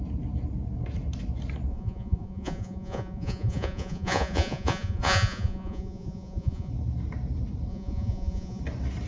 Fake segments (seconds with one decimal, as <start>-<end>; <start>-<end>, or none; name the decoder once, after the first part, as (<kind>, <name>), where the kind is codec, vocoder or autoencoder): 1.7-6.7 (vocoder, Vocos); 7.7-8.6